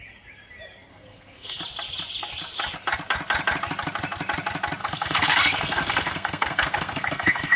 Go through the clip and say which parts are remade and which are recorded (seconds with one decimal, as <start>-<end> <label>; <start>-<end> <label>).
0.0-0.9 recorded; 0.9-1.6 remade; 1.6-4.8 recorded; 4.8-7.6 remade